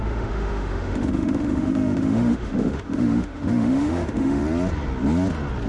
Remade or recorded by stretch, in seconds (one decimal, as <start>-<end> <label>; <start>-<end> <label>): 0.0-4.4 remade; 4.4-5.7 recorded